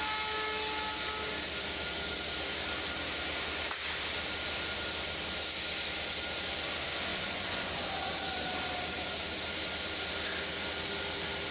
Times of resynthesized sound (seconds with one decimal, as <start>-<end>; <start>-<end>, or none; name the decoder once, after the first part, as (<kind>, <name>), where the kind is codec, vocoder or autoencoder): 7.1-7.9 (vocoder, Vocos)